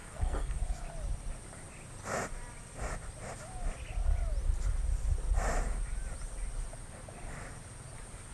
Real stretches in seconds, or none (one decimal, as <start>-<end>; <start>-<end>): 0.6-8.3

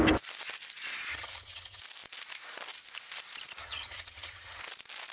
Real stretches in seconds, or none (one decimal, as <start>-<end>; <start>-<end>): 0.0-1.1; 1.8-3.6; 4.6-5.1

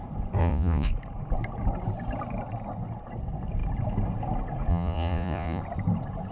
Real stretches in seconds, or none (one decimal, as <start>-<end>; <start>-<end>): 0.0-0.4; 0.9-4.7; 5.6-6.3

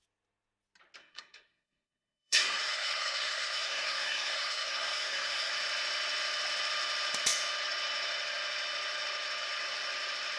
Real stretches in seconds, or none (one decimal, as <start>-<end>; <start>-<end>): 0.0-1.0; 5.5-10.4

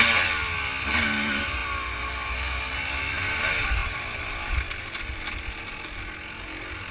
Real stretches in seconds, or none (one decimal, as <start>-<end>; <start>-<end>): 0.0-6.9